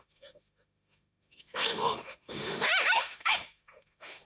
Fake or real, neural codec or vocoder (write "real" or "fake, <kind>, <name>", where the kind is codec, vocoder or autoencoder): fake, autoencoder, DAC-VAE